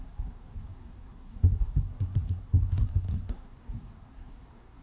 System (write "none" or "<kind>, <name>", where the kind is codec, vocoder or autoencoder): codec, SNAC